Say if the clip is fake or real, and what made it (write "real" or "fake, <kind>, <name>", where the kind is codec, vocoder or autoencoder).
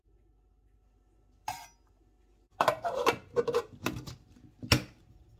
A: real